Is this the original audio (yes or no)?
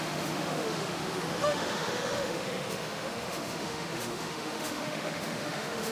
no